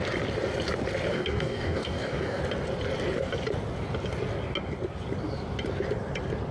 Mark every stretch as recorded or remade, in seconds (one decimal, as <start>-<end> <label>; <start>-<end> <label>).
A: 0.0-1.1 recorded; 1.1-2.4 remade; 2.4-6.5 recorded